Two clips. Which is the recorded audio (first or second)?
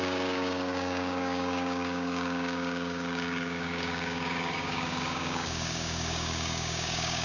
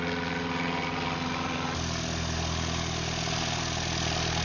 second